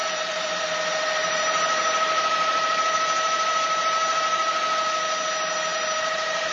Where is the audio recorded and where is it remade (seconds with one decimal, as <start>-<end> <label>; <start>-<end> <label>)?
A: 0.0-0.6 remade; 0.6-1.2 recorded; 1.2-4.6 remade; 4.6-5.7 recorded; 5.7-6.5 remade